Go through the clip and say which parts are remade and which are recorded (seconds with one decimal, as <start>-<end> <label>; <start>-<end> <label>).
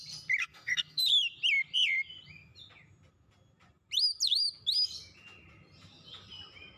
0.0-0.4 recorded; 0.4-1.0 remade; 1.0-6.8 recorded